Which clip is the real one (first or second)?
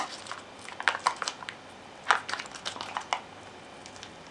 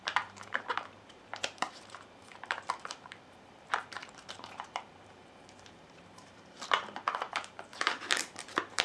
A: first